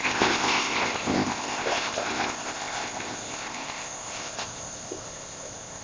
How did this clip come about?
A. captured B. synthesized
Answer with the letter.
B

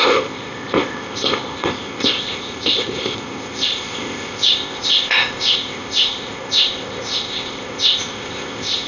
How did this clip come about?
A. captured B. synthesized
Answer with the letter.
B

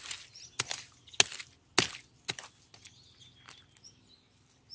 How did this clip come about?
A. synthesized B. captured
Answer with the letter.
B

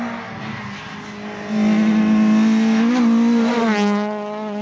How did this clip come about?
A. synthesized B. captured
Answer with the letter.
B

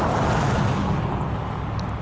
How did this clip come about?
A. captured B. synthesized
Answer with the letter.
A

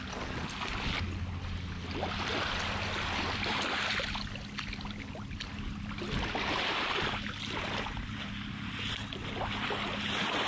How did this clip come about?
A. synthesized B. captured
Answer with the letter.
B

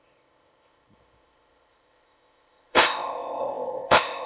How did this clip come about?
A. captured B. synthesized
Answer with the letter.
B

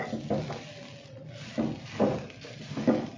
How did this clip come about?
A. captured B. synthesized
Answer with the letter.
A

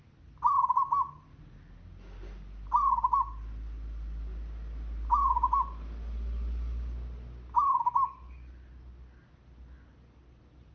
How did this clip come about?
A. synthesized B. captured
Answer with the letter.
B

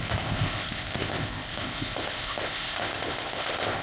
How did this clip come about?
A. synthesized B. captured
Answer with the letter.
A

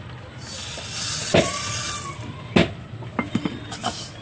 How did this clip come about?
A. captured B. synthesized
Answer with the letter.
A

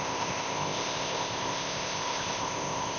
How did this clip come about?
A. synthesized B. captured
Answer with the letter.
A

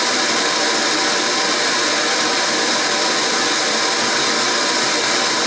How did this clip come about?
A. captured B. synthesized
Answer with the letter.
A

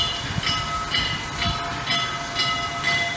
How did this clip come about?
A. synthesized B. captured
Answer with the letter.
B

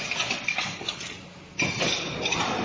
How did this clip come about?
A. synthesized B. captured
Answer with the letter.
B